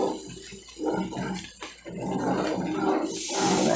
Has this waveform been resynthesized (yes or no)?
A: no